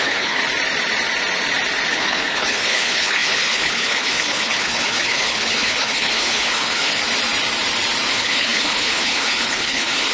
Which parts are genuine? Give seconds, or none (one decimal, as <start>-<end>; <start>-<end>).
0.4-1.9; 7.0-8.1